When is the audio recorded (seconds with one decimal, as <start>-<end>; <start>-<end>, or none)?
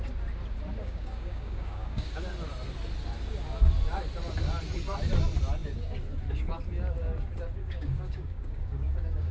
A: 0.0-0.8; 2.2-7.6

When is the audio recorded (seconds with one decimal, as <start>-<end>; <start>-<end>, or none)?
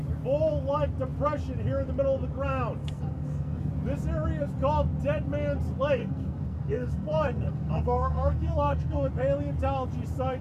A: 0.0-2.8; 3.7-6.0; 9.1-10.4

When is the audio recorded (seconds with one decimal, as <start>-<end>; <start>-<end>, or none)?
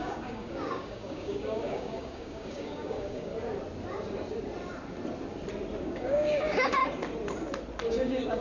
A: 3.3-5.8; 6.8-7.9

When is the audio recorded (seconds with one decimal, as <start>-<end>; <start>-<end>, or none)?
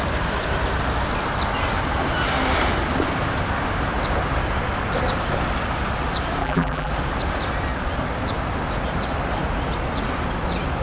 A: 0.0-6.4; 6.9-10.8